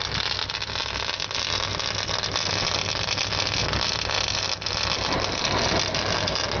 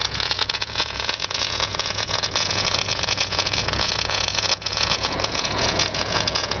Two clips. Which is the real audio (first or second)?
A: first